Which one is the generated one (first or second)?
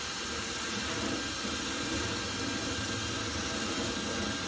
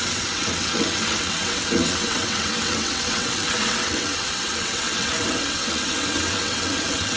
second